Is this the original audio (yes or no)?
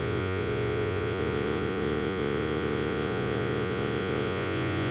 no